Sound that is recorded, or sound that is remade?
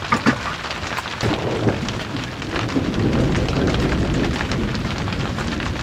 recorded